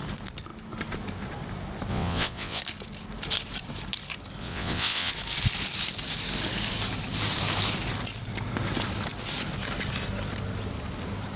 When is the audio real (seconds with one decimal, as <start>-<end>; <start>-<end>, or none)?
0.0-1.9; 2.6-4.4; 5.1-11.4